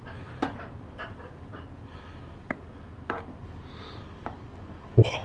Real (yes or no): yes